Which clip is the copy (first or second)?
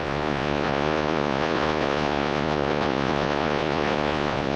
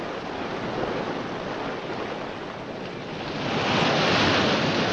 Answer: first